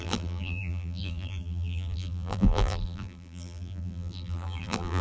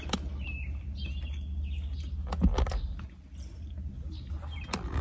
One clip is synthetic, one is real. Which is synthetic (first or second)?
first